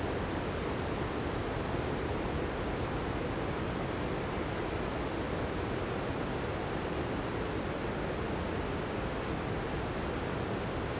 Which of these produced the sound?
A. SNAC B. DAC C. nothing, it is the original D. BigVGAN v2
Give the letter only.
C